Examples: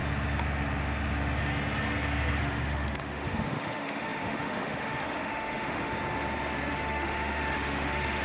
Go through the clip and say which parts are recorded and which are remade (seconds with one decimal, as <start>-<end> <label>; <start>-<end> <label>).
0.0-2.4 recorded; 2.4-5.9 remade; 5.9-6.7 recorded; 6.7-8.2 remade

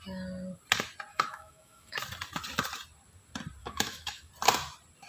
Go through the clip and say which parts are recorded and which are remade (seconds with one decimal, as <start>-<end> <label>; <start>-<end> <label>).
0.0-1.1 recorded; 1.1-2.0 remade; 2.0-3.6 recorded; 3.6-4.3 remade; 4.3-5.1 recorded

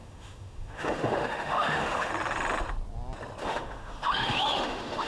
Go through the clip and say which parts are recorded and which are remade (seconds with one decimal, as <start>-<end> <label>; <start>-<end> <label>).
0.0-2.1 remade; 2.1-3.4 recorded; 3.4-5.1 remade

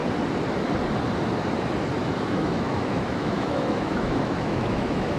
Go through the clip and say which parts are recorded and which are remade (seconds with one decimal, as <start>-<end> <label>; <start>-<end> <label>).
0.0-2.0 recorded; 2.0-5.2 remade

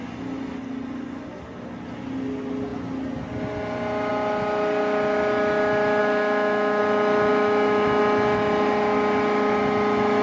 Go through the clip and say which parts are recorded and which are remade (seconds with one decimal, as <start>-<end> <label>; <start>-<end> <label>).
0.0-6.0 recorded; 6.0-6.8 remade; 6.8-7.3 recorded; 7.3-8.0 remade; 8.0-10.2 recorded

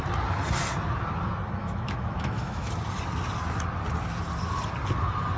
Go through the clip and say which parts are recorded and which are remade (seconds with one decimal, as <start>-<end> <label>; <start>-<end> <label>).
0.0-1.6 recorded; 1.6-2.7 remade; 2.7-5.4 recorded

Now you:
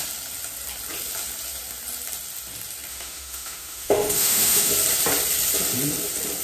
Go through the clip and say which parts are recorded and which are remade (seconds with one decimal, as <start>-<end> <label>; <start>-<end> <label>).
0.0-2.9 recorded; 2.9-4.7 remade; 4.7-6.4 recorded

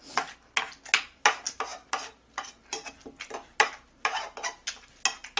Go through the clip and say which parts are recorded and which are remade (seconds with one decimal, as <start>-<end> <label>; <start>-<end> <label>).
0.0-5.4 recorded